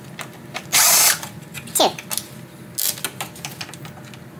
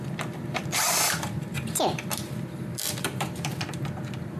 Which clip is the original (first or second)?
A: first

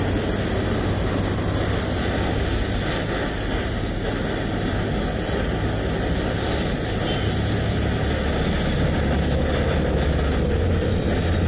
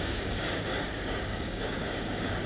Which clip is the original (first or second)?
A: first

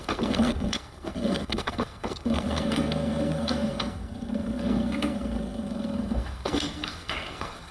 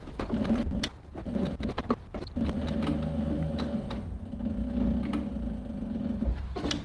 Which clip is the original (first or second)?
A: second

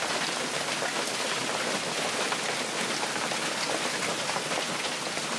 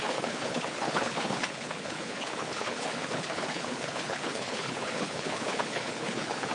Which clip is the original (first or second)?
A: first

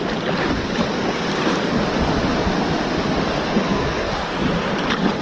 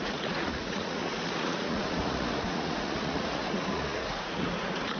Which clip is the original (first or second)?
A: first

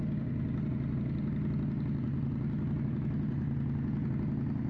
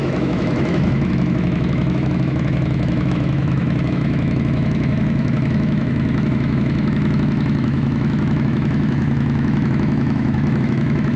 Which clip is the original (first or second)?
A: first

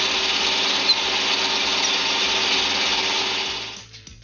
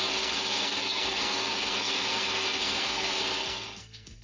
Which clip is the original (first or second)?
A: first